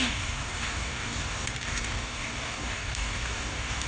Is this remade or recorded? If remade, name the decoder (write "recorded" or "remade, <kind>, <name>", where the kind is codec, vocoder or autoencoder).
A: remade, codec, DAC